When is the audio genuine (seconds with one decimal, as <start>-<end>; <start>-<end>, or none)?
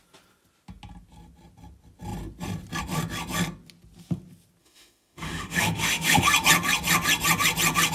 0.0-4.6; 6.2-7.9